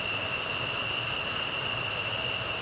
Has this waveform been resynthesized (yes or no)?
no